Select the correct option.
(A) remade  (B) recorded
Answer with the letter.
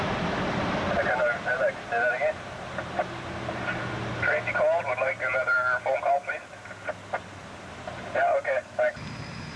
B